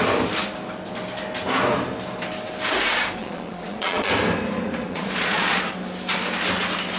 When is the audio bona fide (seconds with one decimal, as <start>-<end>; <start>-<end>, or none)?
0.0-3.2; 4.1-4.8; 5.6-7.0